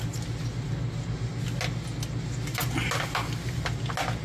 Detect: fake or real real